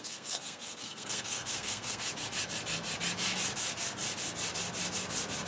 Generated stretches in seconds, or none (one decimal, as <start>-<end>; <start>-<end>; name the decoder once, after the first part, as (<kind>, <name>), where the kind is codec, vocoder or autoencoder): 0.0-2.0 (codec, SNAC)